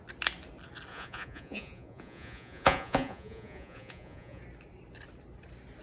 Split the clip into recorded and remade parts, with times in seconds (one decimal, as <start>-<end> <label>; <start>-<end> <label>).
0.0-0.9 recorded; 0.9-4.4 remade; 4.4-5.8 recorded